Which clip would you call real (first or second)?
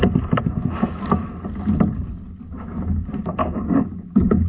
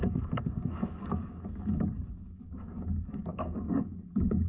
first